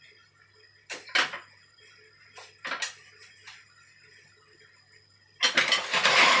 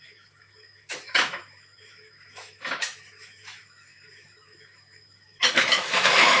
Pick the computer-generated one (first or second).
second